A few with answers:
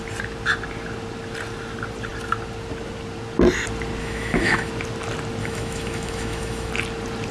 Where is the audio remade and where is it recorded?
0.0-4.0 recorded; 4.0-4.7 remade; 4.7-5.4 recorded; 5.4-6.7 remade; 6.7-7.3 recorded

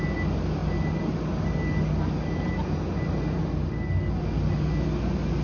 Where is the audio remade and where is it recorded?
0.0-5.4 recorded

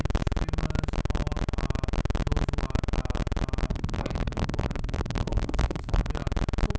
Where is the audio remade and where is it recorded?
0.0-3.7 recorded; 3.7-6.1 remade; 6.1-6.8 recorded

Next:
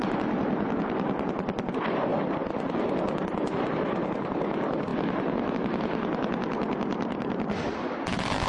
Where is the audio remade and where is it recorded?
0.0-8.5 recorded